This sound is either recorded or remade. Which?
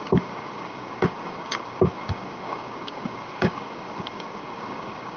remade